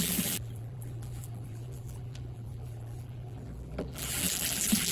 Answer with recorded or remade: remade